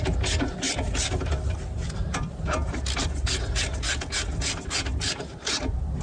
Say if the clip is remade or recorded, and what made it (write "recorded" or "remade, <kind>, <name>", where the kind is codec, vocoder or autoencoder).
recorded